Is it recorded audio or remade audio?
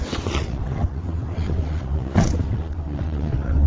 remade